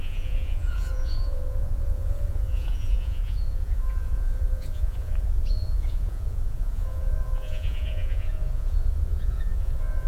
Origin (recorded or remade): remade